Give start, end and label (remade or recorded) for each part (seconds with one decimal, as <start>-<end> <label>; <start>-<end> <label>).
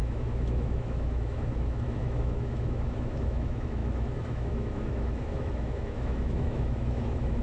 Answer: 0.0-7.4 remade